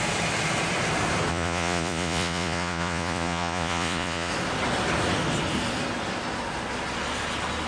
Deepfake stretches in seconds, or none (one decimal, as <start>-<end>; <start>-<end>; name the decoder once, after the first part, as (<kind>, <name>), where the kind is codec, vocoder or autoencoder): 1.3-4.3 (vocoder, Vocos)